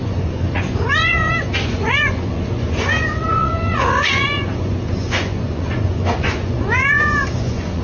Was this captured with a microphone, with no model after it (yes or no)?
no